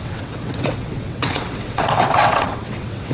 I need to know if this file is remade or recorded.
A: remade